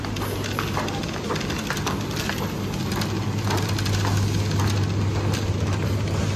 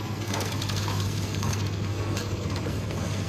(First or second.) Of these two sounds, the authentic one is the first